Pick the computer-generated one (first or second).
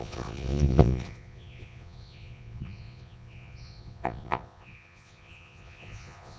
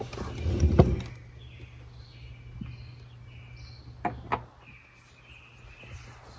first